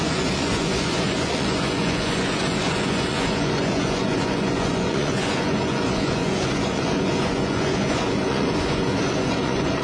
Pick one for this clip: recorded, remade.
remade